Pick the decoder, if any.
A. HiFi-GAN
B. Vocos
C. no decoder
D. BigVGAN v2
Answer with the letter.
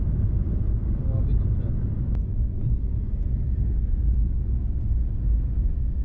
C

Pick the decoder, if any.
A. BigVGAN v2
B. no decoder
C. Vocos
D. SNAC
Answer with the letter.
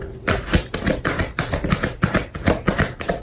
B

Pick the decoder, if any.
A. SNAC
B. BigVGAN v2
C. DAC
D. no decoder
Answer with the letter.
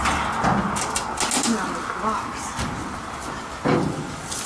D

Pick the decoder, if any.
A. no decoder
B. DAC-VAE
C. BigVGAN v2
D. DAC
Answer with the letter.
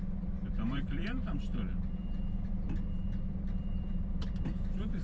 C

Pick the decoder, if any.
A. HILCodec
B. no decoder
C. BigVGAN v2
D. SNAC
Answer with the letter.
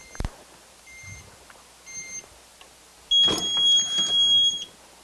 B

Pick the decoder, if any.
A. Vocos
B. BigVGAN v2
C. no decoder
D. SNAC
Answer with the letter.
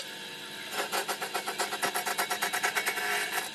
C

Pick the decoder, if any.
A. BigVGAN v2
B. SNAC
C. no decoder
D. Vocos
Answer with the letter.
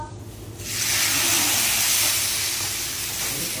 C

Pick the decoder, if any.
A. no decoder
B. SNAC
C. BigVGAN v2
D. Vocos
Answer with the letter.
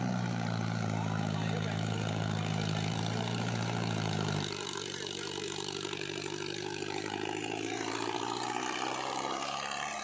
C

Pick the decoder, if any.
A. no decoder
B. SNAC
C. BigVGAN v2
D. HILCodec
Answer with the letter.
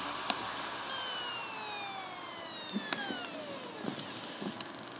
A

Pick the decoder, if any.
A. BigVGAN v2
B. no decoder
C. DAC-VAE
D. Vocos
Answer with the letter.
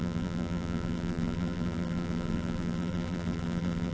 A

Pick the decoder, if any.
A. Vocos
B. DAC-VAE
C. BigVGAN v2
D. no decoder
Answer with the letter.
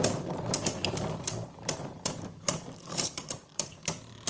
C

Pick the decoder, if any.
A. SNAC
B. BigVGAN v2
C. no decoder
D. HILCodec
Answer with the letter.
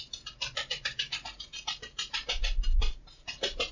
B